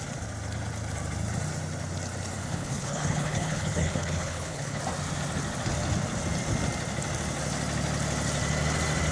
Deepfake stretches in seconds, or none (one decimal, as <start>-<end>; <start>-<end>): 2.4-4.8